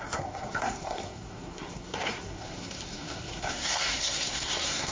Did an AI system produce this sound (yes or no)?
yes